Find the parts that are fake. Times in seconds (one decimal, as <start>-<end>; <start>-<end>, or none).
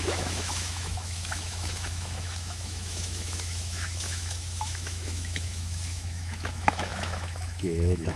0.0-8.2